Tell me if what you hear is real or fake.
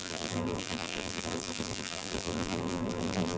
fake